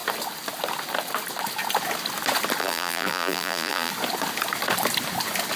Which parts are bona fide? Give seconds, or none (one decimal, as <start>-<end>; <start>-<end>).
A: 0.0-2.6; 3.9-5.6